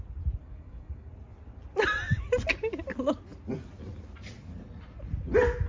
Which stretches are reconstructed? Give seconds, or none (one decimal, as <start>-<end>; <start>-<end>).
0.4-1.1